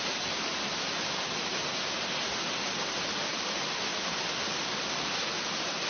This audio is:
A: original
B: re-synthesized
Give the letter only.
A